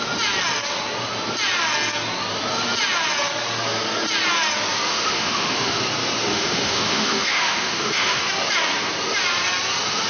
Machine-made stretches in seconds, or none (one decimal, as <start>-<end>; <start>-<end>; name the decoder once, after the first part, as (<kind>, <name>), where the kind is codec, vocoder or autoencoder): 4.9-5.8 (autoencoder, DAC-VAE); 6.3-8.2